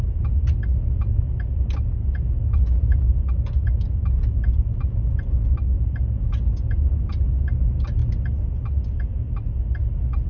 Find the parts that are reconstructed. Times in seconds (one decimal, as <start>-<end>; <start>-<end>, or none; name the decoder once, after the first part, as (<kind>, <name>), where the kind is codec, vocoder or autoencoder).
none